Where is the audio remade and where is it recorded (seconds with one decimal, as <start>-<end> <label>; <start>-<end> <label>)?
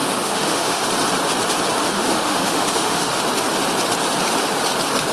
0.0-0.9 remade; 0.9-1.8 recorded; 1.8-3.2 remade; 3.2-5.1 recorded